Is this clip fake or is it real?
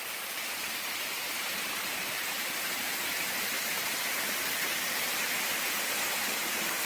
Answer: fake